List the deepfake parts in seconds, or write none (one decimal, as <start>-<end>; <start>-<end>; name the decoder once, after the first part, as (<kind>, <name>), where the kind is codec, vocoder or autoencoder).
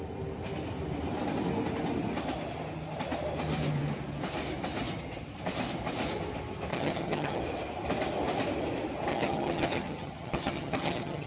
6.7-7.4 (vocoder, HiFi-GAN); 9.1-11.3